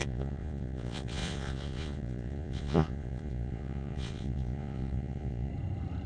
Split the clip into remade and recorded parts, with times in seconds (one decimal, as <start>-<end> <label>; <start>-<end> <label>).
0.0-5.5 remade; 5.5-6.1 recorded